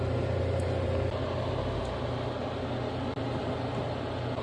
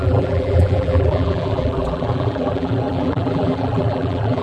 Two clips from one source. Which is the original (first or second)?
first